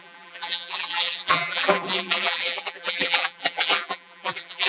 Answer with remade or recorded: remade